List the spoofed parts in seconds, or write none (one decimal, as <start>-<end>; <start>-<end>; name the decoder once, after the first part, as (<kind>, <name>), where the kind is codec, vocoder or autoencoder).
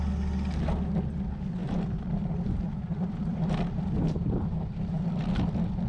1.6-5.1 (vocoder, BigVGAN v2)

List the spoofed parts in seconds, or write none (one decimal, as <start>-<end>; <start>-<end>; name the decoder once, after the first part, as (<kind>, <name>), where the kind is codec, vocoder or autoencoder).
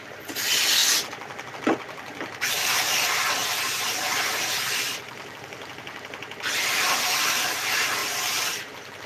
8.0-8.7 (vocoder, BigVGAN v2)